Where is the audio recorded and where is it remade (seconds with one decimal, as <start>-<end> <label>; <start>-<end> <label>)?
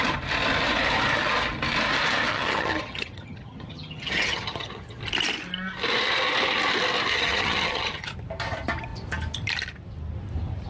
0.0-2.3 recorded; 2.3-5.0 remade; 5.0-7.1 recorded; 7.1-8.1 remade; 8.1-10.7 recorded